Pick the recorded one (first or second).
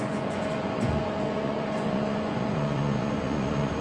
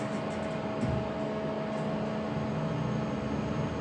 second